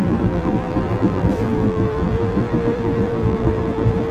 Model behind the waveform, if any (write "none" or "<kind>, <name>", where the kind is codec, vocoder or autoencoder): vocoder, BigVGAN v2